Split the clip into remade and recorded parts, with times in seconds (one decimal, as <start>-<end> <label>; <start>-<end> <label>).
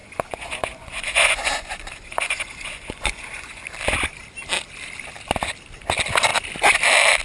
0.0-3.6 remade; 3.6-7.2 recorded